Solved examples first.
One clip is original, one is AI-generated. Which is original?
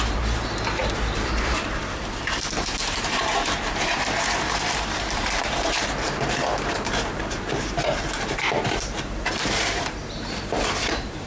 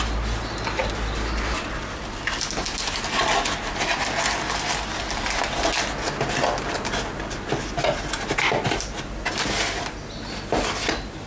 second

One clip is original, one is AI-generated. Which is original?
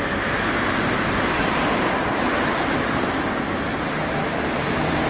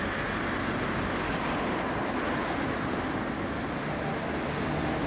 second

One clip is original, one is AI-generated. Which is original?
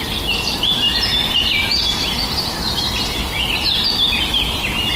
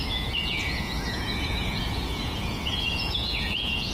first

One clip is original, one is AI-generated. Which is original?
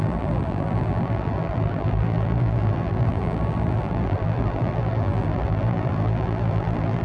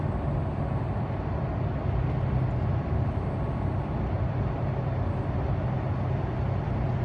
second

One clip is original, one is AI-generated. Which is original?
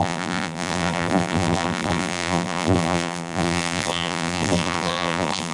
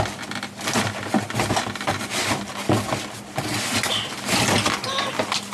second